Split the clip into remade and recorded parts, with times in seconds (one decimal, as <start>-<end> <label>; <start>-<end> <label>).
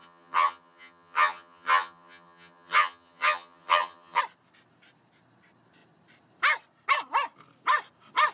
0.0-4.2 remade; 4.2-8.3 recorded